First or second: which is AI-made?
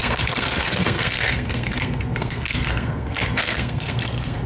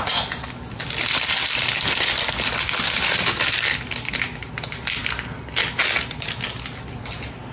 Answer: first